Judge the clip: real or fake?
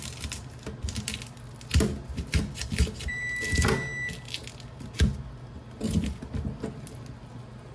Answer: real